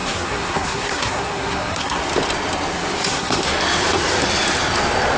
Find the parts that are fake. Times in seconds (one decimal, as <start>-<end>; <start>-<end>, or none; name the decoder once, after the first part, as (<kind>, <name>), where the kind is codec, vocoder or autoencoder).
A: 0.0-2.0 (codec, SNAC); 3.1-3.6